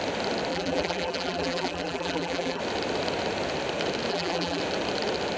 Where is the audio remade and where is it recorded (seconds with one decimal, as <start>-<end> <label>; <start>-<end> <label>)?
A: 0.0-0.5 recorded; 0.5-2.6 remade; 2.6-4.1 recorded; 4.1-4.6 remade; 4.6-5.4 recorded